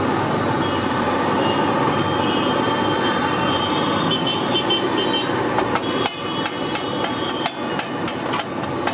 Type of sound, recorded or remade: recorded